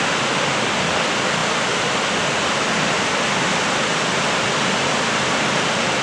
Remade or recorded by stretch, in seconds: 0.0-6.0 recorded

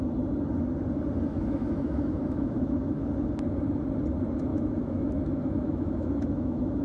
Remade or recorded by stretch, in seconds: 0.0-1.3 recorded; 1.3-3.1 remade; 3.1-4.5 recorded; 4.5-6.8 remade